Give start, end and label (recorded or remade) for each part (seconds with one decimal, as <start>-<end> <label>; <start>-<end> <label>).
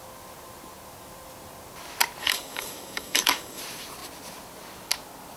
0.0-2.2 recorded; 2.2-3.6 remade; 3.6-5.4 recorded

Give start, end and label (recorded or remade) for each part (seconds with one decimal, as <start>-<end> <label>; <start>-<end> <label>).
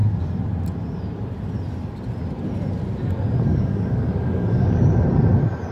0.0-3.5 recorded; 3.5-4.8 remade; 4.8-5.7 recorded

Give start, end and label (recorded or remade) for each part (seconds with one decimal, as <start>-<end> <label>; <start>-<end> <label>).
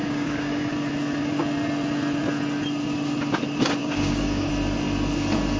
0.0-0.7 remade; 0.7-3.8 recorded; 3.8-4.5 remade; 4.5-5.6 recorded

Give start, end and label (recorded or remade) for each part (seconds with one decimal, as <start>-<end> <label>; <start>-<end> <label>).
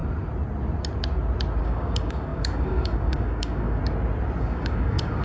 0.0-1.6 recorded; 1.6-3.8 remade; 3.8-4.4 recorded; 4.4-5.2 remade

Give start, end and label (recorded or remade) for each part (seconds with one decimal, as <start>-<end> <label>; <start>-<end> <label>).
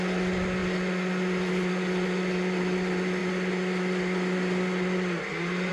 0.0-5.7 recorded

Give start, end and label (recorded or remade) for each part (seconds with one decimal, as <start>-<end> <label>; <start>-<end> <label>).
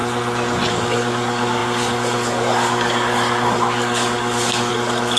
0.0-0.7 recorded; 0.7-5.2 remade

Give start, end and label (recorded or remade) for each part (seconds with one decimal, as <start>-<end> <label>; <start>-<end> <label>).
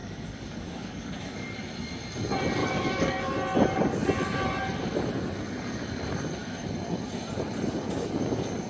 0.0-1.6 remade; 1.6-2.6 recorded; 2.6-3.3 remade; 3.3-8.7 recorded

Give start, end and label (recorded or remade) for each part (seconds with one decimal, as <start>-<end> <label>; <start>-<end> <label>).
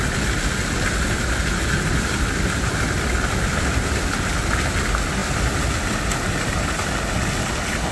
0.0-7.9 recorded